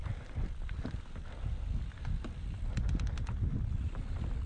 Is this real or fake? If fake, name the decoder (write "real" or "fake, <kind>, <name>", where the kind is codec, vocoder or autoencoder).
real